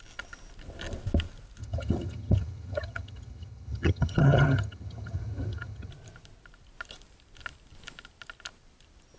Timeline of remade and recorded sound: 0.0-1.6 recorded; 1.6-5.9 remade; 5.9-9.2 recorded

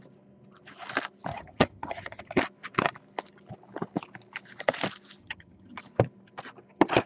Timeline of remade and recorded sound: 0.0-1.3 recorded; 1.3-2.4 remade; 2.4-5.2 recorded; 5.2-5.8 remade; 5.8-7.1 recorded

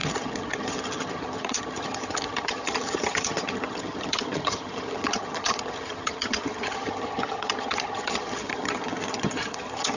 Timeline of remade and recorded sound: 0.0-10.0 remade

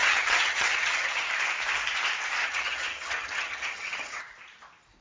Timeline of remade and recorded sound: 0.0-1.3 remade; 1.3-2.4 recorded; 2.4-4.2 remade; 4.2-5.0 recorded